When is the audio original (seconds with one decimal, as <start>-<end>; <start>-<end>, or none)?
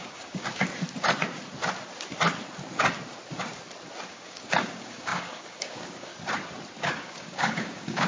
0.7-4.1; 6.1-6.8